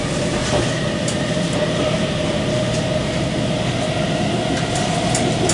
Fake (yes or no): no